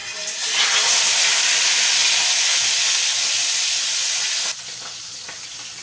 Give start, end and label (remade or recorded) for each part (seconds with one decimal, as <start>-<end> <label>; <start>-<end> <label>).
0.0-5.8 recorded

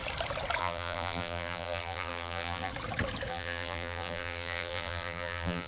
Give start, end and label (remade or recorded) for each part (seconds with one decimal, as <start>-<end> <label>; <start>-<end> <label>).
0.0-0.6 recorded; 0.6-2.7 remade; 2.7-3.3 recorded; 3.3-5.7 remade

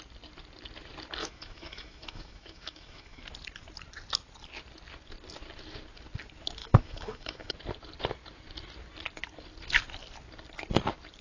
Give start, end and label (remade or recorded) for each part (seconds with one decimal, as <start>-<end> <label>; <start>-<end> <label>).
0.0-1.2 recorded; 1.2-3.2 remade; 3.2-6.6 recorded; 6.6-7.5 remade; 7.5-11.2 recorded

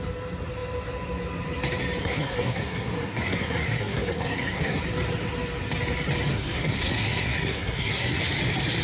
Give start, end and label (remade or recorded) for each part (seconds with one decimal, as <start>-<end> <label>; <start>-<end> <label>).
0.0-2.0 recorded; 2.0-4.8 remade; 4.8-6.3 recorded; 6.3-8.2 remade; 8.2-8.8 recorded

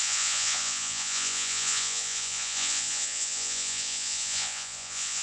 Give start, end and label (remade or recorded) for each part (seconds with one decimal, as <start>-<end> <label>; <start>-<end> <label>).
0.0-5.2 remade

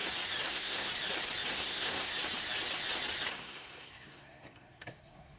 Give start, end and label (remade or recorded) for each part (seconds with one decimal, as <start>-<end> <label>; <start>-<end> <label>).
0.0-0.5 recorded; 0.5-0.9 remade; 0.9-1.5 recorded; 1.5-2.1 remade; 2.1-3.3 recorded; 3.3-5.4 remade